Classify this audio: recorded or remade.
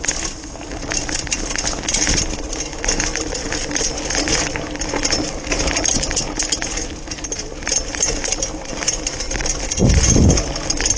recorded